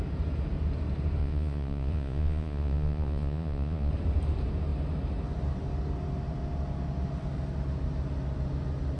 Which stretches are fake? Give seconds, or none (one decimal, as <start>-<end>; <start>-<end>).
1.2-3.9